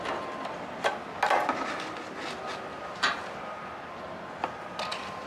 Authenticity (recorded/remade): recorded